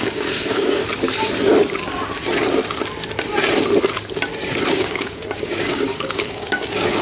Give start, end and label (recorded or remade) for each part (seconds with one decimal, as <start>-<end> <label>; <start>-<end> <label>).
0.0-0.8 remade; 0.8-4.7 recorded; 4.7-7.0 remade